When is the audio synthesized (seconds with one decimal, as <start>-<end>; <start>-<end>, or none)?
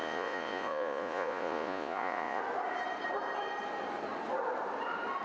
0.0-2.4